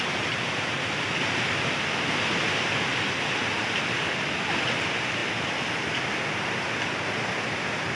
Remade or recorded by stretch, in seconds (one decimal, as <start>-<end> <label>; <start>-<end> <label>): 0.0-7.9 recorded